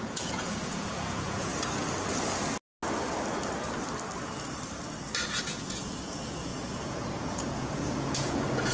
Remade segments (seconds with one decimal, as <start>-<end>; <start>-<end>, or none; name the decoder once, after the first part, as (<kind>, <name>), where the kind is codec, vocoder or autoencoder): 0.0-1.5 (vocoder, Vocos); 5.4-8.7